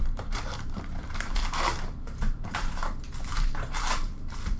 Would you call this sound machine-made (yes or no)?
yes